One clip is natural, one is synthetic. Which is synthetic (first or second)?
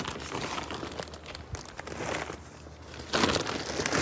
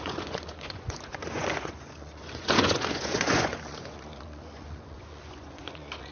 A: second